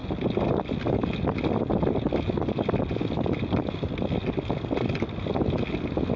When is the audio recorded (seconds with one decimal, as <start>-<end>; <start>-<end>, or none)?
0.0-6.2